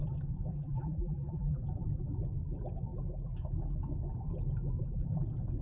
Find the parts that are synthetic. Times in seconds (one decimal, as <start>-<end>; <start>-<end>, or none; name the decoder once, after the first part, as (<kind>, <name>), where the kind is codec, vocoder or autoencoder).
0.5-1.6 (vocoder, BigVGAN v2)